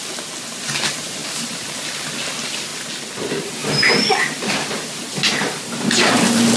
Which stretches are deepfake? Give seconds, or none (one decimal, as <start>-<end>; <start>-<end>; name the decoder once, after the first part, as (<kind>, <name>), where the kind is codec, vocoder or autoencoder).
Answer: 1.2-2.1 (vocoder, BigVGAN v2)